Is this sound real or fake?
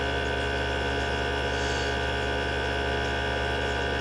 real